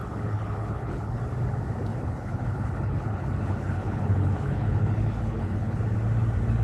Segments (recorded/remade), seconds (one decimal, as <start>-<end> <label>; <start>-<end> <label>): 0.0-1.2 remade; 1.2-1.9 recorded; 1.9-5.8 remade; 5.8-6.6 recorded